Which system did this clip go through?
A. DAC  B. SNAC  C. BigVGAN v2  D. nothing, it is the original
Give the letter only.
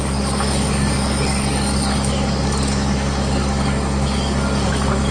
A